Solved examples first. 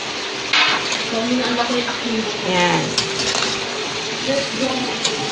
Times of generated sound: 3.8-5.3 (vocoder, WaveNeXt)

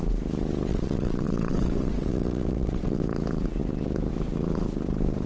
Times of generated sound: 0.7-3.0 (vocoder, WaveNeXt)

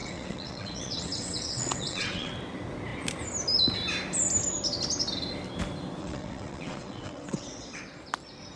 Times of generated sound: 0.0-2.3 (vocoder, WaveNeXt); 6.0-7.8

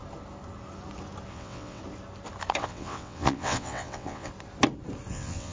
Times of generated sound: 1.3-1.8 (vocoder, WaveNeXt); 2.6-4.3; 5.1-5.5

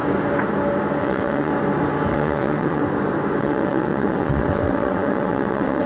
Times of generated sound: 1.0-1.5 (vocoder, WaveNeXt); 2.1-2.8; 3.4-5.9

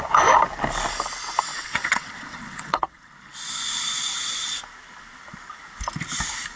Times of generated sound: 1.5-3.0 (vocoder, WaveNeXt); 4.1-4.6